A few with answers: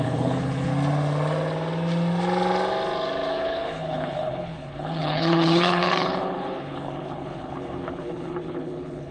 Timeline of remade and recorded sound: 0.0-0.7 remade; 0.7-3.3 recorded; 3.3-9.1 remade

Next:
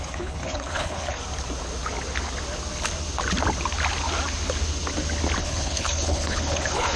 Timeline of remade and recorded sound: 0.0-1.2 remade; 1.2-5.4 recorded; 5.4-7.0 remade